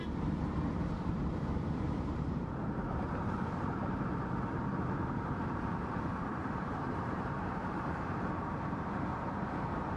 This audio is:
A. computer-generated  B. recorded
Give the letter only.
A